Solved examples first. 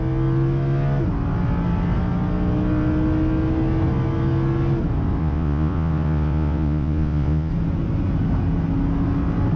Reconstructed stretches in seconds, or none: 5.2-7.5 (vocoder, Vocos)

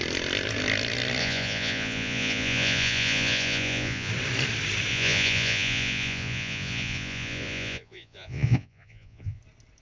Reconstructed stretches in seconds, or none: 1.2-4.1 (vocoder, Vocos); 4.9-9.4

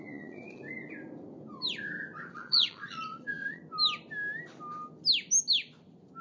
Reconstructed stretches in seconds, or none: 0.0-0.6 (vocoder, Vocos); 2.3-3.6

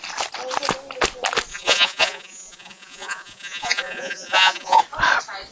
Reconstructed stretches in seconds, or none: 1.5-4.8 (vocoder, Vocos)

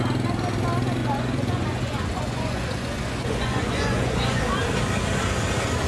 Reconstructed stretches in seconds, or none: 1.0-4.4 (vocoder, Vocos)

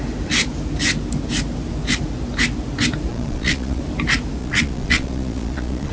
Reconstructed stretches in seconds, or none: 3.1-3.8 (vocoder, Vocos); 4.4-5.9

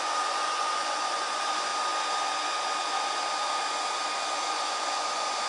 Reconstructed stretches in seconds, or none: 0.0-1.7 (vocoder, Vocos); 4.5-5.5

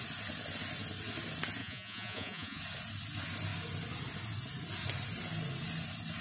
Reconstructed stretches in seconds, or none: 1.6-2.6 (vocoder, Vocos)